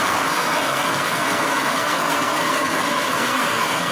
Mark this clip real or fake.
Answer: fake